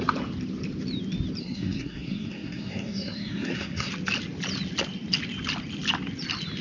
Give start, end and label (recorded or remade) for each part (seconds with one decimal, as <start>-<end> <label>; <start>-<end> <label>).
0.0-1.4 recorded; 1.4-3.9 remade; 3.9-6.6 recorded